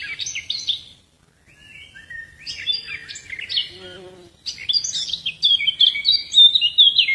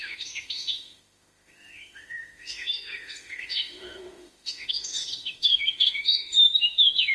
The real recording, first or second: first